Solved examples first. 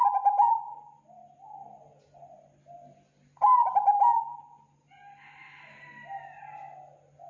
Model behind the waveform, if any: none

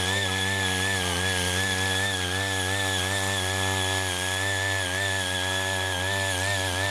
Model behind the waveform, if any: none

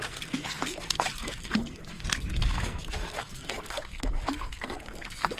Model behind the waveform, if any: codec, SNAC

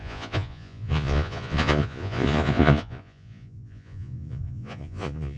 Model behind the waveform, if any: vocoder, Vocos